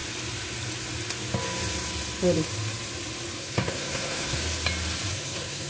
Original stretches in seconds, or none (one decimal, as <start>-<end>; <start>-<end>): 0.0-3.4; 4.4-5.1